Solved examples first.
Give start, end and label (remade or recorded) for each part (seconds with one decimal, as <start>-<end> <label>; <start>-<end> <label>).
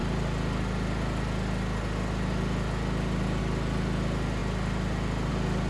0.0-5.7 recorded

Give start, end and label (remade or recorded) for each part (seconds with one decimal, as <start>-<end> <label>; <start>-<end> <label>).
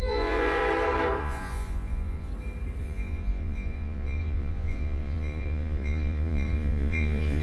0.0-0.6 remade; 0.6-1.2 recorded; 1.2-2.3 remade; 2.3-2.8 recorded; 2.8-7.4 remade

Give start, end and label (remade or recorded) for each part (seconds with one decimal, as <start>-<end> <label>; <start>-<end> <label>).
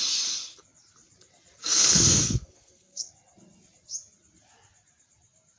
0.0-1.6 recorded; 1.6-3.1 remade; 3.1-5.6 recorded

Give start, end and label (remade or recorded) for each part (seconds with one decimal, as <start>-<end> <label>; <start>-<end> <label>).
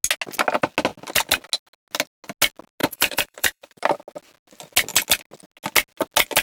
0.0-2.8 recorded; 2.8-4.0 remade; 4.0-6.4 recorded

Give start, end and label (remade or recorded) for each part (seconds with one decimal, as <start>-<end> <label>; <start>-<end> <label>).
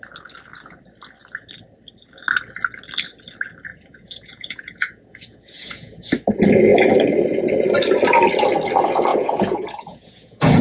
0.0-3.7 recorded; 3.7-6.1 remade; 6.1-9.1 recorded; 9.1-10.6 remade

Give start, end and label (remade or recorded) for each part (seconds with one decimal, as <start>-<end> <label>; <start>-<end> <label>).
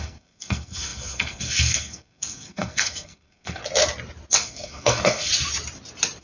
0.0-3.6 remade; 3.6-4.3 recorded; 4.3-5.3 remade; 5.3-6.2 recorded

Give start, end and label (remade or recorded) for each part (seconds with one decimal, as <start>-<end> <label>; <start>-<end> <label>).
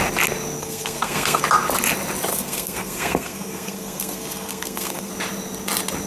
0.0-0.6 recorded; 0.6-1.4 remade; 1.4-2.3 recorded; 2.3-5.1 remade; 5.1-6.1 recorded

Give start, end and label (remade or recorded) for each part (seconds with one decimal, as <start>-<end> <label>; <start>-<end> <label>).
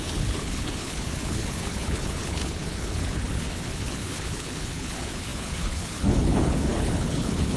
0.0-7.6 remade